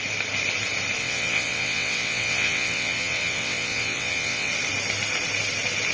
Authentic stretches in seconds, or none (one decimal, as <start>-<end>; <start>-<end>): 0.0-1.0; 4.5-5.9